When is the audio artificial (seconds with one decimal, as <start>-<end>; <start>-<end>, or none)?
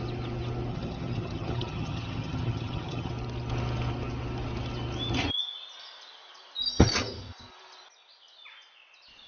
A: 0.7-3.1